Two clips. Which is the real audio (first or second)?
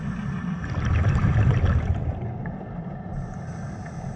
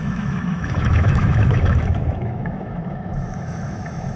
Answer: first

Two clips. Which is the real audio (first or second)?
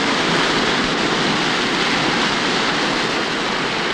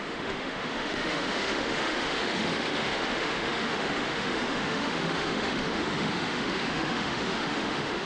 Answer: first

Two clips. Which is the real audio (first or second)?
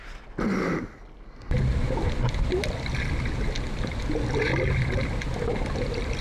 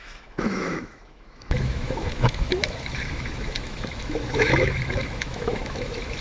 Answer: first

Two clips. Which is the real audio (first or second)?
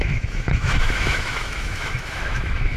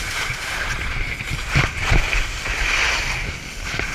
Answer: second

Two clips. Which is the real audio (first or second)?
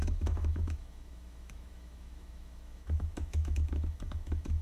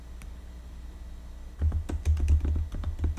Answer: second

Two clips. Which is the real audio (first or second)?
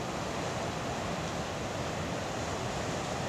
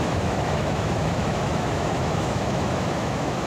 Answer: first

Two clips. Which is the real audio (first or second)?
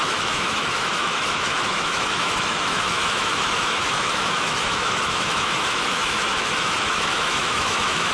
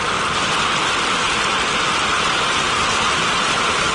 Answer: second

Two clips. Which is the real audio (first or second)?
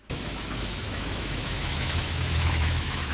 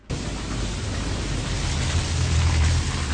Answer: second